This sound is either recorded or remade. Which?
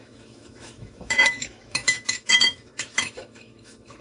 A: remade